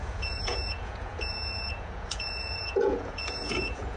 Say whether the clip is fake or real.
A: fake